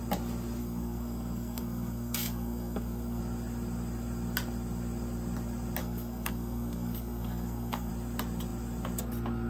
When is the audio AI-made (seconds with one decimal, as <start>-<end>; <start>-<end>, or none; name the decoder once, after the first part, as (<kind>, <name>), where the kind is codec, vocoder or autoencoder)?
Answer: 0.6-3.2 (codec, SNAC); 5.8-7.9